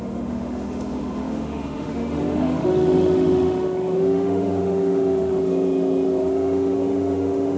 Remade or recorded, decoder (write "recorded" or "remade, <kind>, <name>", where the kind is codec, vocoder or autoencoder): remade, autoencoder, DAC-VAE